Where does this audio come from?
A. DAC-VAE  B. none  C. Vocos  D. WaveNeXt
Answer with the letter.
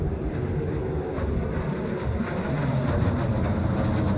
B